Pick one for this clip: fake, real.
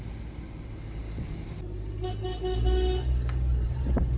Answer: real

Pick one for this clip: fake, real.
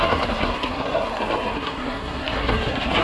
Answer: fake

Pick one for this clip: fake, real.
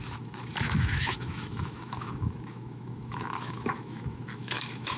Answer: fake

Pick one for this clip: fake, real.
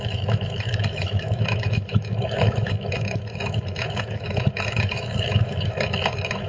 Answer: fake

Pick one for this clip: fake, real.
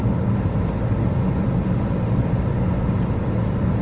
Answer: real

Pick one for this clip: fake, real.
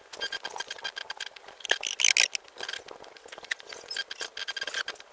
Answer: real